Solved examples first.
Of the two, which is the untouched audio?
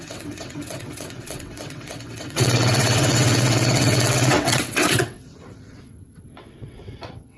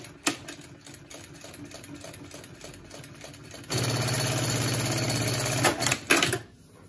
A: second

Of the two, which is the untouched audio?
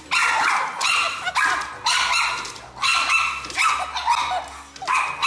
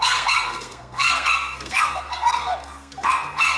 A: first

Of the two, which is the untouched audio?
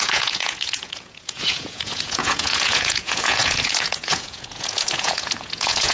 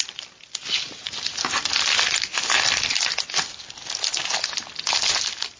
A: second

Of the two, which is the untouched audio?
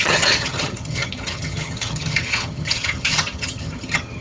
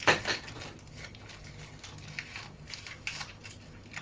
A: second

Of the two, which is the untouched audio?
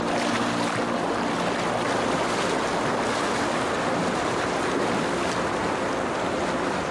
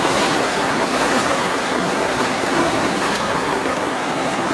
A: first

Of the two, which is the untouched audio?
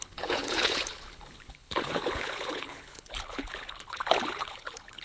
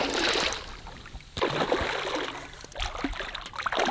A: second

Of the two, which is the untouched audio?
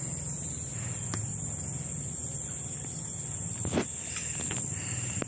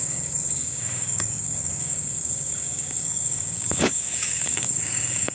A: first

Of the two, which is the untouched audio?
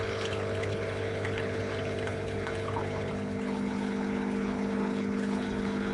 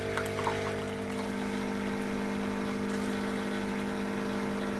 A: second